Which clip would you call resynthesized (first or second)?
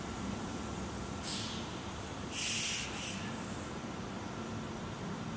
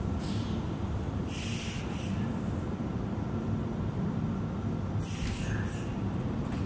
second